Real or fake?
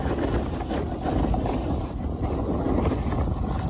real